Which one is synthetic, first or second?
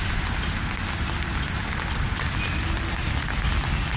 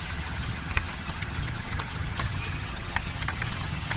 second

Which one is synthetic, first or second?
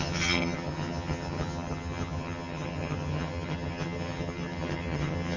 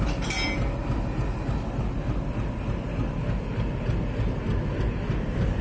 first